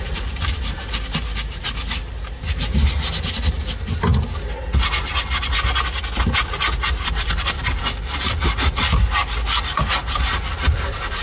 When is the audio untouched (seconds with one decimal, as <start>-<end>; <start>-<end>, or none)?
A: 0.0-11.2